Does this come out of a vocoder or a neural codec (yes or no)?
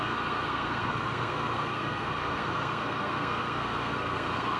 yes